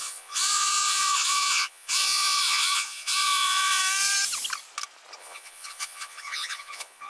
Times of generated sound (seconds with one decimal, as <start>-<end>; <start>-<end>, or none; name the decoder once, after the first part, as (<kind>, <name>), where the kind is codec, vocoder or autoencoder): 0.0-3.8 (vocoder, Vocos); 5.2-7.1